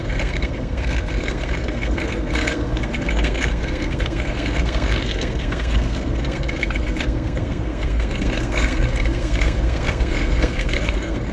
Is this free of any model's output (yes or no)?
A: no